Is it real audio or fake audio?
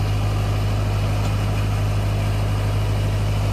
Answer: real